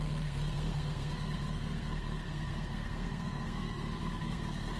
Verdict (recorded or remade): remade